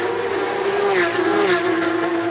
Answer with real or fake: real